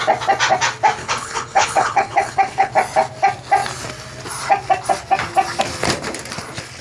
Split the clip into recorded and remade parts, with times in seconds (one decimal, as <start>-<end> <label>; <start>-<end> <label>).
0.0-1.0 recorded; 1.0-2.7 remade; 2.7-6.8 recorded